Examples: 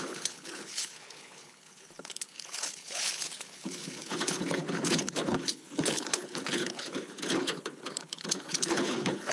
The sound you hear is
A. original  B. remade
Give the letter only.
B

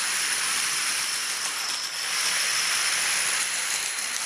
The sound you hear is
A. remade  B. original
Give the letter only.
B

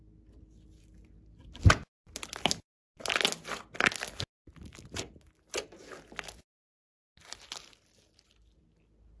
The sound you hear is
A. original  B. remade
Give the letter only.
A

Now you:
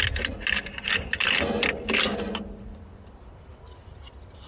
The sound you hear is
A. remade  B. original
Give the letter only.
B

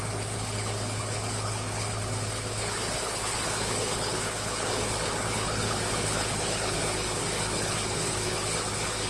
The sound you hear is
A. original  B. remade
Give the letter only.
B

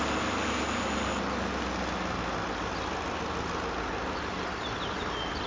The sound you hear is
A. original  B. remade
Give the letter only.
A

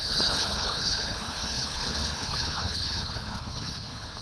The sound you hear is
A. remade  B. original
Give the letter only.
A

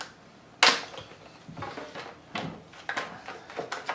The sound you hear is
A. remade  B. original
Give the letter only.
B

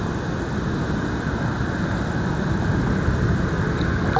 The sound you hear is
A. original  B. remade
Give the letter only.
A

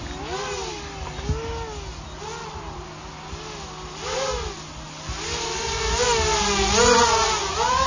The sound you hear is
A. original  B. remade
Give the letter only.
A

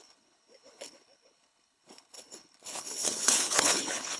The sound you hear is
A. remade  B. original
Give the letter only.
A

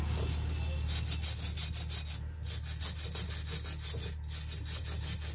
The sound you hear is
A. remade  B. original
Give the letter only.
B